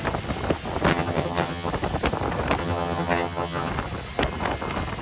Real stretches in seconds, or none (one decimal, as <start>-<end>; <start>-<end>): 0.0-0.9; 1.7-2.6; 3.7-5.0